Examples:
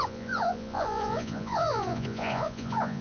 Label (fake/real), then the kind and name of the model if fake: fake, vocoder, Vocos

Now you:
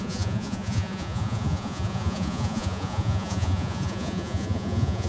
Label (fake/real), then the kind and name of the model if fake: fake, vocoder, Vocos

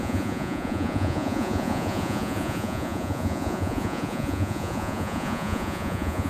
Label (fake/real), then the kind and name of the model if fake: fake, vocoder, Vocos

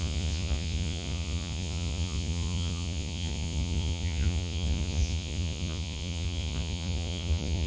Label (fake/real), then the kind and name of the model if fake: fake, vocoder, Vocos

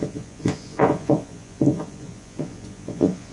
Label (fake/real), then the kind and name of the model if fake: fake, vocoder, Vocos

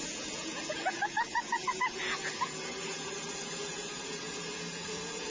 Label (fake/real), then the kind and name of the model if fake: fake, vocoder, Vocos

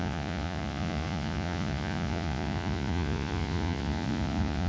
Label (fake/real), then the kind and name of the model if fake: fake, vocoder, Vocos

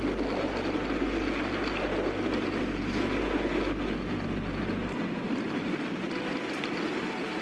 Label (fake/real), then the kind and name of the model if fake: real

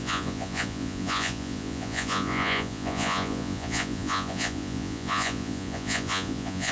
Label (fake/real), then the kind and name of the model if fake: fake, vocoder, Vocos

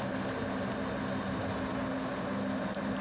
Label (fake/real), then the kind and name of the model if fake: real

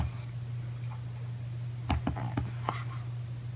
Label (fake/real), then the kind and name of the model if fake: real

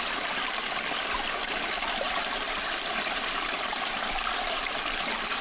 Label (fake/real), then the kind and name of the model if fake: real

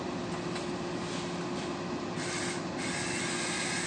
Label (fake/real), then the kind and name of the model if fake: real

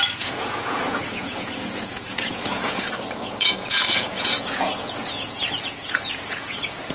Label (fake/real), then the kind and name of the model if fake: fake, vocoder, Vocos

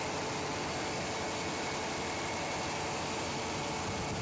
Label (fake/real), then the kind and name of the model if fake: real